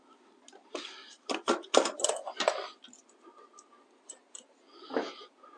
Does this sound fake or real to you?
real